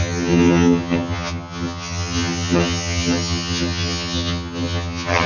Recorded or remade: remade